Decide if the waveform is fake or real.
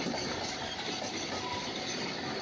real